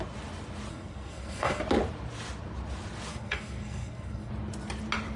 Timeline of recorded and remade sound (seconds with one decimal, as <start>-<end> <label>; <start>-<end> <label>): 0.0-0.7 recorded; 0.7-1.6 remade; 1.6-3.1 recorded; 3.1-4.3 remade; 4.3-5.2 recorded